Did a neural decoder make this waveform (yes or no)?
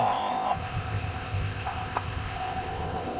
yes